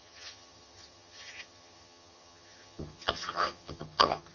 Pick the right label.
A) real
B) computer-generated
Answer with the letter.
B